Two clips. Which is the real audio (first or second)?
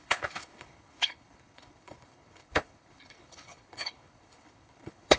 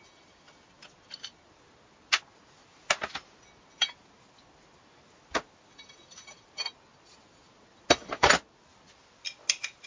second